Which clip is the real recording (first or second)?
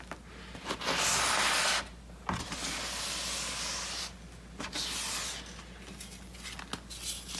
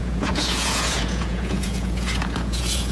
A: first